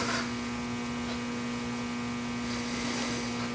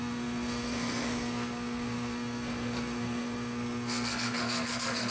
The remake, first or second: second